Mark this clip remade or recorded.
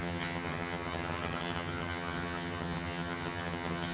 remade